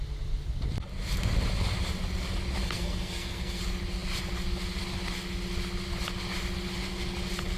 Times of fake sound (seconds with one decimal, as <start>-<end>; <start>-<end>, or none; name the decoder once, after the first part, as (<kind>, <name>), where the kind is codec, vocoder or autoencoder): 2.6-3.6 (codec, SNAC)